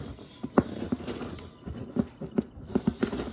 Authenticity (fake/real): real